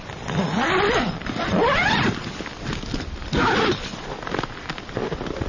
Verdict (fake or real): real